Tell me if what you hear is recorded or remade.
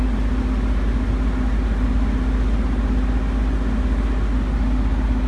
recorded